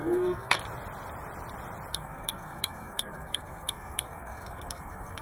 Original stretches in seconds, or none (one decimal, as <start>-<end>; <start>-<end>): 0.6-1.9